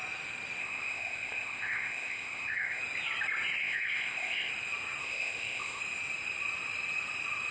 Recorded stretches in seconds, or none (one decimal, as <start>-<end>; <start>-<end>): 0.0-0.6; 2.8-3.6; 4.5-5.0; 5.8-7.5